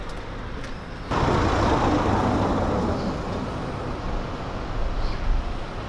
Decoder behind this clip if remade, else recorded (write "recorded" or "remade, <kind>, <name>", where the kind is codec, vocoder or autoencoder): recorded